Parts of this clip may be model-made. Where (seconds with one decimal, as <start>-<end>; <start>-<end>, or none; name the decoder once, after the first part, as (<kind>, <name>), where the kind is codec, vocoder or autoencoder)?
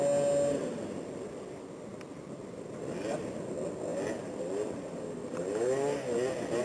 1.9-3.5 (vocoder, BigVGAN v2); 3.9-6.6